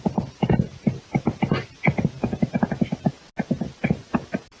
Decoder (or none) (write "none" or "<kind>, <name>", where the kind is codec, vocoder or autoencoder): none